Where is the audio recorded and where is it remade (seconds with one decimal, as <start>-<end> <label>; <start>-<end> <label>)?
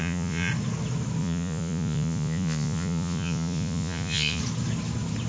0.0-0.5 remade; 0.5-1.2 recorded; 1.2-4.4 remade; 4.4-5.3 recorded